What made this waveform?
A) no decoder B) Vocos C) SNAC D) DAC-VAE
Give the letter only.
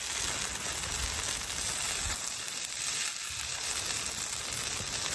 A